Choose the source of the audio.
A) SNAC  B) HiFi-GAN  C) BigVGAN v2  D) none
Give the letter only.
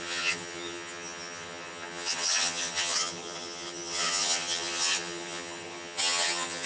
B